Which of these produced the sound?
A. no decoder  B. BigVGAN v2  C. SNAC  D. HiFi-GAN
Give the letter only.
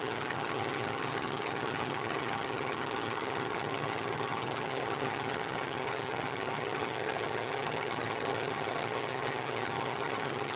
D